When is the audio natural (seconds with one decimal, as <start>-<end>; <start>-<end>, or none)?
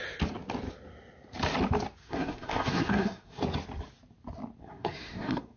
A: 0.0-2.0; 3.4-4.6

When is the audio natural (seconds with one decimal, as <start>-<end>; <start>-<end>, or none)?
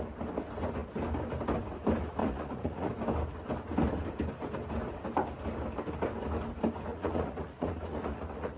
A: 0.0-2.2; 2.9-6.9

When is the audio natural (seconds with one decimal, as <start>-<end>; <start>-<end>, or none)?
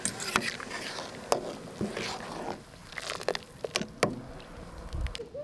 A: 0.0-5.4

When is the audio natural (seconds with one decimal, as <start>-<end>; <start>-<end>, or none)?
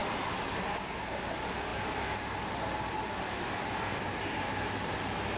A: 0.0-5.4